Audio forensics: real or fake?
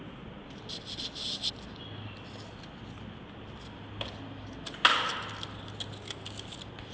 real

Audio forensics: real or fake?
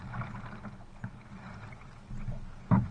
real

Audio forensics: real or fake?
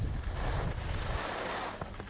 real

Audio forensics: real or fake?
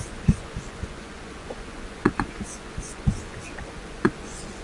fake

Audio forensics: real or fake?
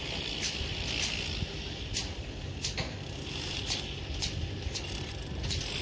real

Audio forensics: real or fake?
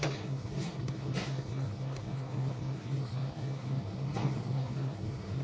fake